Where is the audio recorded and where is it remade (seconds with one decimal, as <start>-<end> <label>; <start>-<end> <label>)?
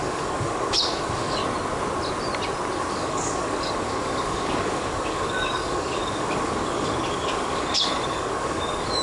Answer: 0.0-1.4 remade; 1.4-2.8 recorded; 2.8-9.0 remade